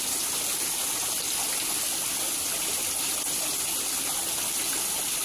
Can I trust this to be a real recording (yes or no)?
yes